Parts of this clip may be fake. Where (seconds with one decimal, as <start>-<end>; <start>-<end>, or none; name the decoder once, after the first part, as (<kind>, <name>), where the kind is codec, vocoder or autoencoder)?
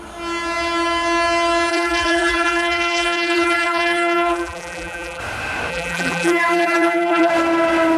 1.7-5.2 (vocoder, BigVGAN v2); 5.7-7.3